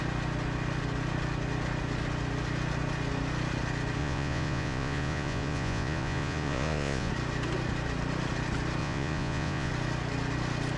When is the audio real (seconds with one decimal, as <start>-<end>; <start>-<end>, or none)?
0.0-4.0; 7.1-8.8; 9.7-10.8